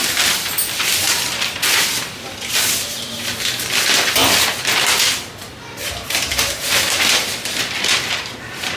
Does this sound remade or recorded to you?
remade